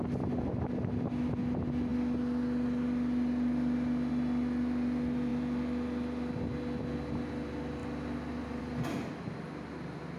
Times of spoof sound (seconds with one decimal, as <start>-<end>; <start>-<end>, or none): none